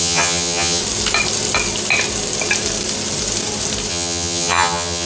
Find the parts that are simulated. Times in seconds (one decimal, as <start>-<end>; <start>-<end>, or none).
0.0-0.8; 3.9-5.1